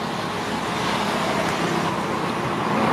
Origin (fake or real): real